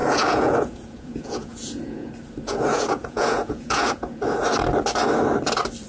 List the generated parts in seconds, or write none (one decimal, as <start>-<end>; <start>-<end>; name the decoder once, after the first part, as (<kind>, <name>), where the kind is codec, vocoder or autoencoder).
0.0-2.1 (vocoder, Vocos); 2.5-4.2